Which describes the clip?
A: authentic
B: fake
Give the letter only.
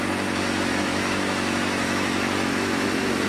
B